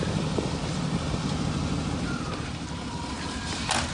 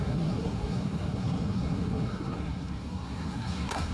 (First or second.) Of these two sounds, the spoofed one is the second